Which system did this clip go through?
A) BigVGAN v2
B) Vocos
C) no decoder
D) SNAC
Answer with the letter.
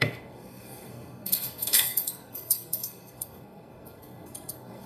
D